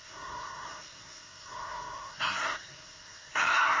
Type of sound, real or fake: fake